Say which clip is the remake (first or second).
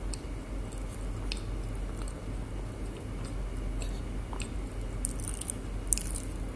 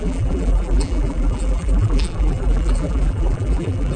second